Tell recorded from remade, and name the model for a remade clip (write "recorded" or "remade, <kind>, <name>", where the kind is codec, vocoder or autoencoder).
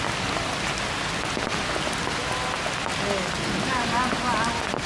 recorded